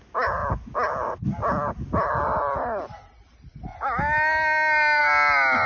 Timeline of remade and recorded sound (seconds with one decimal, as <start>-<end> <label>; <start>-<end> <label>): 0.0-5.7 recorded